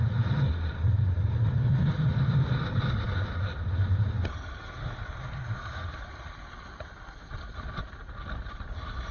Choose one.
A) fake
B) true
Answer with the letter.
B